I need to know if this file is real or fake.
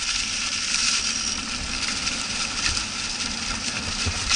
real